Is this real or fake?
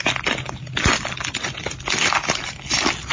real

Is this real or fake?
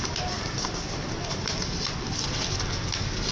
real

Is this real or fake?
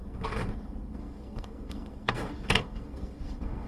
fake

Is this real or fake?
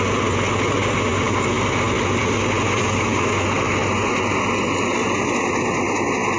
real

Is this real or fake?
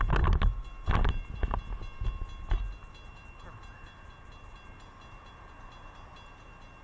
real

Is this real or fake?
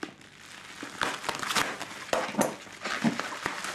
real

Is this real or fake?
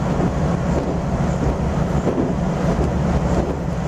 real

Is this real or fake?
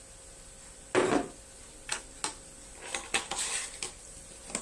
real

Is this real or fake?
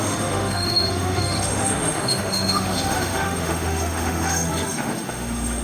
fake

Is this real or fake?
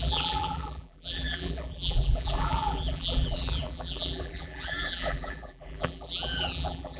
fake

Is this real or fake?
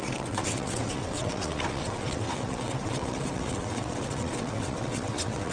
fake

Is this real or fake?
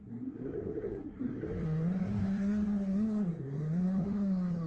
fake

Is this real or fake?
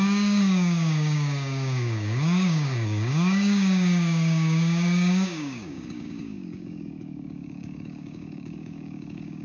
fake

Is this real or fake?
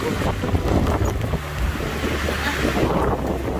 real